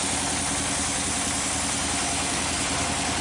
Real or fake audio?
real